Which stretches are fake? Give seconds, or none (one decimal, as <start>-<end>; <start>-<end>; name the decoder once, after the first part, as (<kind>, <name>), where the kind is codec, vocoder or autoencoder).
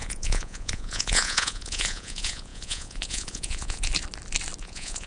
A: 0.0-3.9 (vocoder, Vocos); 4.6-5.1